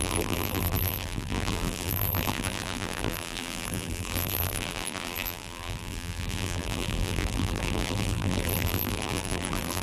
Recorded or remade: remade